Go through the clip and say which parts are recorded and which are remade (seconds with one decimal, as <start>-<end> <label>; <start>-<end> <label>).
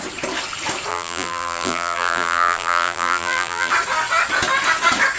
0.0-0.9 recorded; 0.9-3.7 remade; 3.7-5.2 recorded